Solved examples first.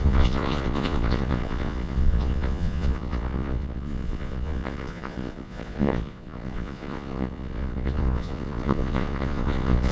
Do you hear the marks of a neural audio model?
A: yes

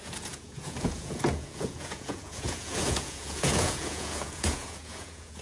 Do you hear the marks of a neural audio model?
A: yes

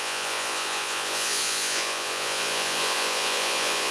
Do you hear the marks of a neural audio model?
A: yes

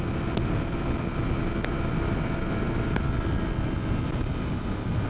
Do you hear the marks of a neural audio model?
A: no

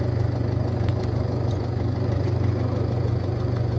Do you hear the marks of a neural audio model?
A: yes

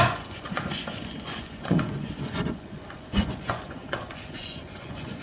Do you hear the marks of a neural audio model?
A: yes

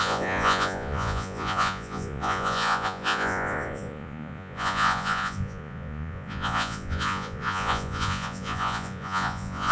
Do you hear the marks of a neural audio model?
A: yes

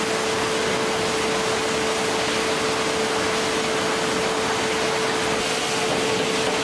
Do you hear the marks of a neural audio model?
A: no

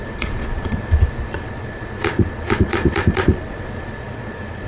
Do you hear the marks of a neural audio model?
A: yes